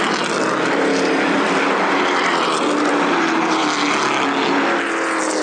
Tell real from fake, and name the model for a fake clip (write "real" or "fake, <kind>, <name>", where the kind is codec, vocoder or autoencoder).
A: real